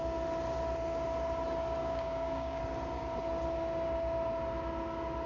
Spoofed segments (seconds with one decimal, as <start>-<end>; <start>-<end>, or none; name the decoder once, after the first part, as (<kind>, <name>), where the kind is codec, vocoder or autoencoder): 1.8-2.6 (codec, DAC)